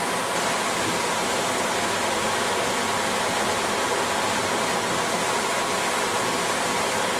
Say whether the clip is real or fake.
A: real